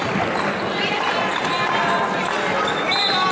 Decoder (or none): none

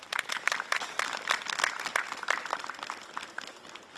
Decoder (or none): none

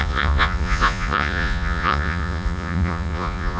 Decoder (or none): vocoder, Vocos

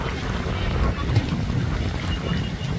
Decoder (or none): none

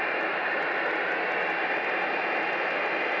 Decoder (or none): none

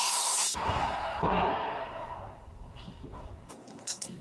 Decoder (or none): codec, SNAC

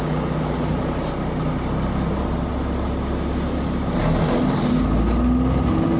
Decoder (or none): none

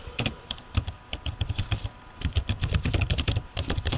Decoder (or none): vocoder, BigVGAN v2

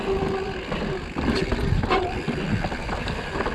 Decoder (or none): none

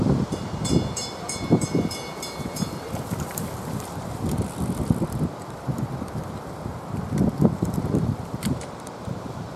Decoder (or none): vocoder, BigVGAN v2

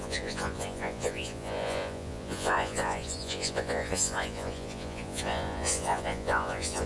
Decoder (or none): vocoder, Vocos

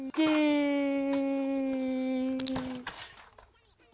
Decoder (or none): none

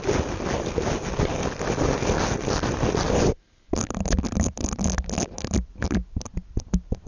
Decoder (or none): none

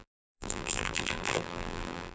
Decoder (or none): vocoder, BigVGAN v2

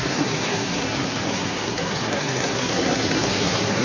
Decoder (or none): codec, SNAC